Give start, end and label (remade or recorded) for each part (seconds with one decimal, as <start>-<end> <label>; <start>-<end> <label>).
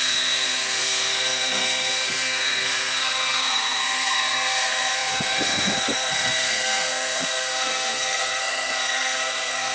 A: 0.0-9.7 remade